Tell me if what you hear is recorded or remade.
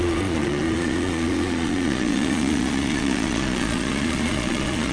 remade